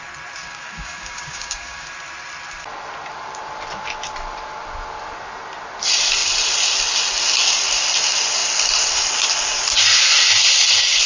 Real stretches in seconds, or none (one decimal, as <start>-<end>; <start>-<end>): 0.0-0.4; 1.9-11.1